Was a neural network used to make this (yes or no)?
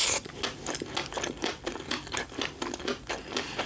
no